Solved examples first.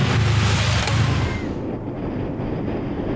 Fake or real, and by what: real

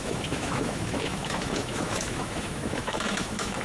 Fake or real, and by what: fake, autoencoder, DAC-VAE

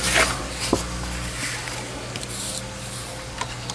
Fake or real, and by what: real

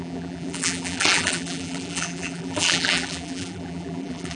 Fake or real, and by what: fake, vocoder, BigVGAN v2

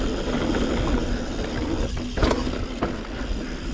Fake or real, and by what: real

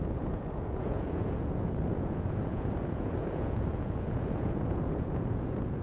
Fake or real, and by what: fake, vocoder, Vocos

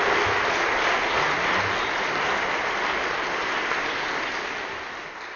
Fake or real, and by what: real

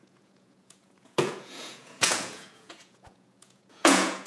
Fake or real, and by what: fake, vocoder, Vocos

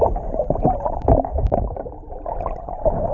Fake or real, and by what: fake, vocoder, BigVGAN v2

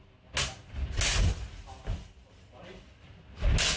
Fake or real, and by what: real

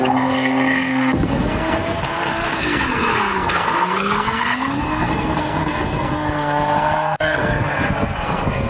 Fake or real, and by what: fake, codec, SNAC